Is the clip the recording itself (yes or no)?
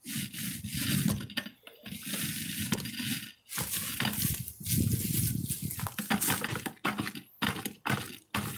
yes